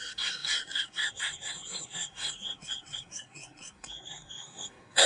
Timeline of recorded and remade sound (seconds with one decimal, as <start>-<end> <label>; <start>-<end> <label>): 0.0-5.1 remade